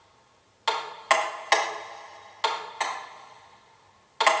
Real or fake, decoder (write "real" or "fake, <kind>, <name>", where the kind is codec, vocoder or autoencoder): real